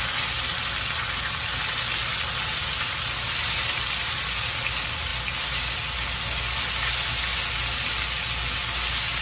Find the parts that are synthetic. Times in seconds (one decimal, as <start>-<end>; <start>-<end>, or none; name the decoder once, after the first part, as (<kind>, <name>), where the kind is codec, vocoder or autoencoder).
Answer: none